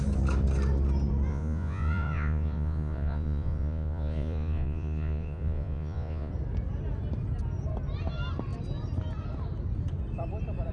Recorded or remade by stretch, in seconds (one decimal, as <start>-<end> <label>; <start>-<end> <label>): 0.0-1.3 recorded; 1.3-6.3 remade; 6.3-10.7 recorded